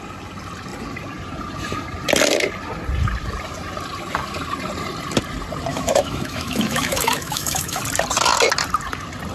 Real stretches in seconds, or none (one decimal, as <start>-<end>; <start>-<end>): 0.0-5.7; 7.8-9.3